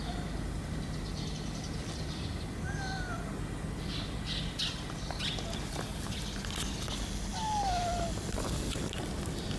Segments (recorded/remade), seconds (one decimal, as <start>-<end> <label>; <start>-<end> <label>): 0.0-9.6 recorded